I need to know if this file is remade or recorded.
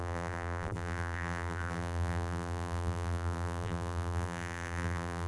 remade